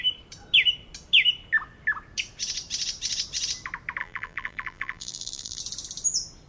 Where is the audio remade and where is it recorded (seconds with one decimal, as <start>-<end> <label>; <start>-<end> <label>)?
0.0-4.0 recorded; 4.0-5.6 remade; 5.6-6.5 recorded